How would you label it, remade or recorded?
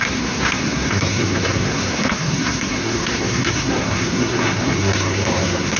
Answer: remade